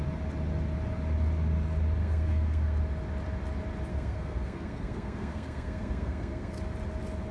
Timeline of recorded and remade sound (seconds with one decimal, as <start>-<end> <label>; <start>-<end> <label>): 0.0-2.0 recorded; 2.0-2.8 remade; 2.8-3.9 recorded; 3.9-6.6 remade; 6.6-7.3 recorded